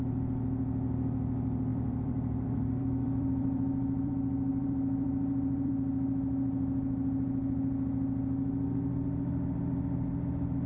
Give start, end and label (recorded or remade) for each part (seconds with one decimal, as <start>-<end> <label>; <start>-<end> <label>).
0.0-1.7 recorded; 1.7-4.1 remade; 4.1-4.5 recorded; 4.5-5.7 remade; 5.7-10.7 recorded